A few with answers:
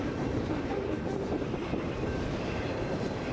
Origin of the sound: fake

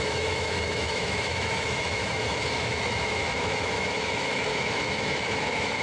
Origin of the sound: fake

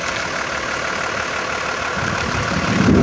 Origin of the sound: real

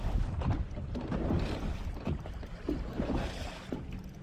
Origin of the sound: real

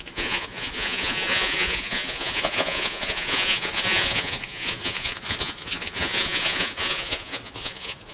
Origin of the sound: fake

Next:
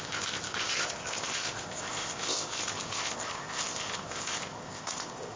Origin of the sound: fake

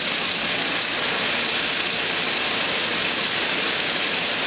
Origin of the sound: real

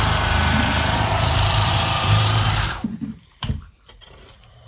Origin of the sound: fake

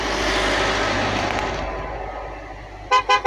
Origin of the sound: real